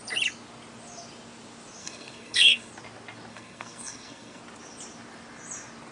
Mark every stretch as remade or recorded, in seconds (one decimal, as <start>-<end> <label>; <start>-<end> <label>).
0.0-1.8 recorded; 1.8-2.7 remade; 2.7-3.3 recorded; 3.3-4.4 remade; 4.4-5.9 recorded